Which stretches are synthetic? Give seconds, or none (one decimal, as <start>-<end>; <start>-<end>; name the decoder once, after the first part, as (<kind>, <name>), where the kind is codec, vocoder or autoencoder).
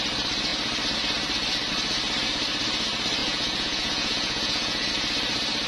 3.2-4.9 (vocoder, Vocos)